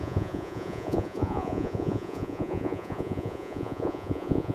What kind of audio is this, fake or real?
fake